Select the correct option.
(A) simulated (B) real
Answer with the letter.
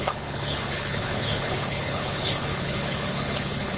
A